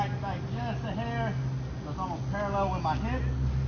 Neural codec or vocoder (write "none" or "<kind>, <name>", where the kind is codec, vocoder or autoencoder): none